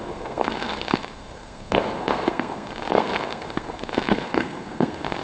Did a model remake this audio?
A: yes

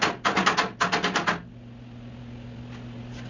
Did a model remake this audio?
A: no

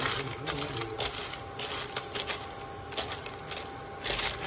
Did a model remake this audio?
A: no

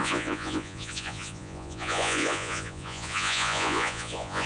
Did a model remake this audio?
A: yes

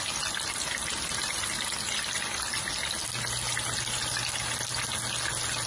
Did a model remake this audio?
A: no